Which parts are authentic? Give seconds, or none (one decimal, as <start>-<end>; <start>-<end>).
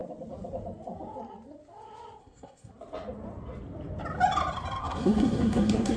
0.0-2.2; 2.7-4.8